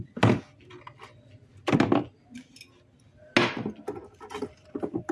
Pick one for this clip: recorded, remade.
recorded